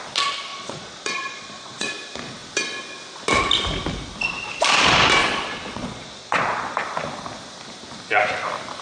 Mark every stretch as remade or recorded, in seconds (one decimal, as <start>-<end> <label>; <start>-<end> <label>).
0.0-0.5 recorded; 0.5-1.9 remade; 1.9-5.2 recorded; 5.2-6.8 remade; 6.8-8.8 recorded